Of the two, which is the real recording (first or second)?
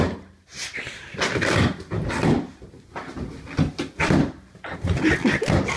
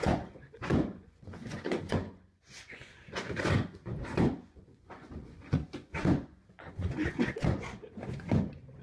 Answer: first